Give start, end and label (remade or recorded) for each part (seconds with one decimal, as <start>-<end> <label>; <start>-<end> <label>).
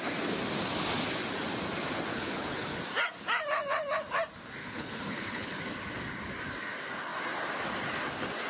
0.0-2.1 recorded; 2.1-2.8 remade; 2.8-4.6 recorded; 4.6-5.6 remade; 5.6-8.5 recorded